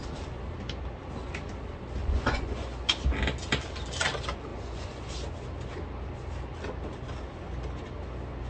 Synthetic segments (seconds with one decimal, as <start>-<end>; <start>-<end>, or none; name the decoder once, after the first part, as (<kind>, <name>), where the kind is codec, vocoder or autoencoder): 2.0-2.9 (vocoder, Vocos); 4.5-5.1